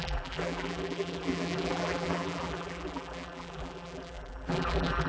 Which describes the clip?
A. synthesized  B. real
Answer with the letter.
A